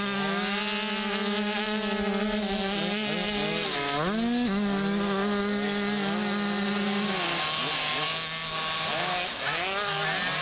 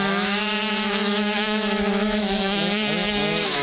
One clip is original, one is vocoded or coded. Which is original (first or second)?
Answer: first